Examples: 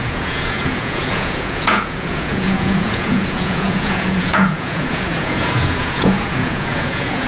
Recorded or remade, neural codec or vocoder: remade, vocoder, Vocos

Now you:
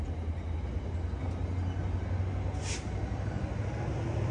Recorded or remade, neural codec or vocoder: recorded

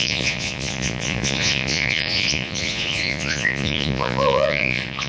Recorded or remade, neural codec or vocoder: remade, vocoder, Vocos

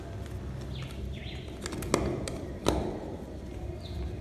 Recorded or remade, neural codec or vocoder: recorded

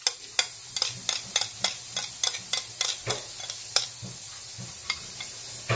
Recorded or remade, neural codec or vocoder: recorded